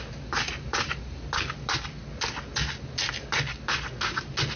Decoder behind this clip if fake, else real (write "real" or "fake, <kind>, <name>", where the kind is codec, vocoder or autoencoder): real